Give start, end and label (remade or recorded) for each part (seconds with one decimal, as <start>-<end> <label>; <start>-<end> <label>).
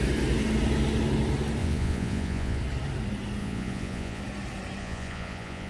0.0-1.6 recorded; 1.6-2.6 remade; 2.6-3.4 recorded; 3.4-4.2 remade; 4.2-4.8 recorded; 4.8-5.7 remade